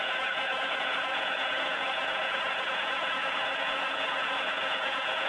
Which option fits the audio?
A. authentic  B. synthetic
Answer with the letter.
B